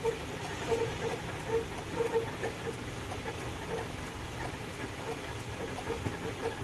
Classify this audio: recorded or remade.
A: recorded